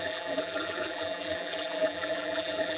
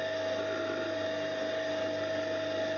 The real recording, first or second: second